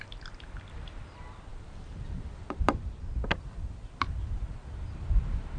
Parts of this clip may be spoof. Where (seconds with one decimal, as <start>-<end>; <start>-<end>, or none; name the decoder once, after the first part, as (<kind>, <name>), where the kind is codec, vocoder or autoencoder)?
none